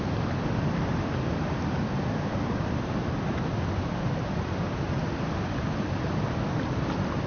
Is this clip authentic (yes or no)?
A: yes